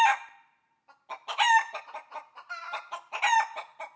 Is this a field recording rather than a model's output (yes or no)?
yes